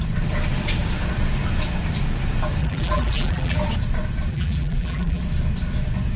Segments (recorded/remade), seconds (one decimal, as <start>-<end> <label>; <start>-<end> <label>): 0.0-2.6 recorded; 2.6-3.6 remade; 3.6-4.3 recorded; 4.3-5.2 remade; 5.2-6.2 recorded